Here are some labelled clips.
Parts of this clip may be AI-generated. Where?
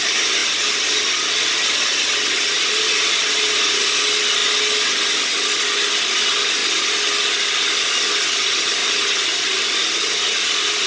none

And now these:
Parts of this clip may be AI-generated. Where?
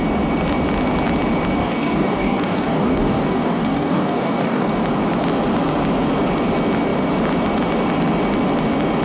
1.6-4.7 (codec, DAC)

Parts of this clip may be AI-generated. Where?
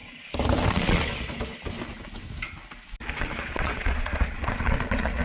0.7-1.1 (vocoder, Vocos); 3.2-5.2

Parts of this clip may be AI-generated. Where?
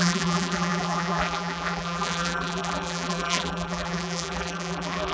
0.0-5.1 (vocoder, BigVGAN v2)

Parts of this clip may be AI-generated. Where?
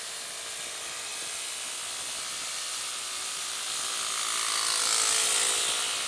none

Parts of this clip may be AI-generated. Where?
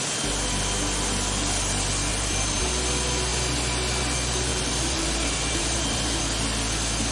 2.1-2.6 (vocoder, BigVGAN v2); 4.5-6.2